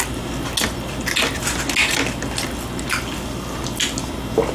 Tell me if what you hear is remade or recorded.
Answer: recorded